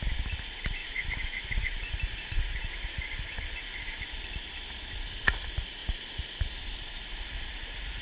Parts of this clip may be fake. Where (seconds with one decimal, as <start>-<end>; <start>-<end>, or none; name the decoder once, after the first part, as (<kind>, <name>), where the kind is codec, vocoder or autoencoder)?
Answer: 0.8-1.9 (autoencoder, DAC-VAE)